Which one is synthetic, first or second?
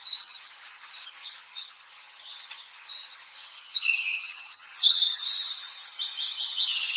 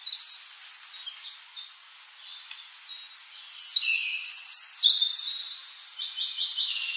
first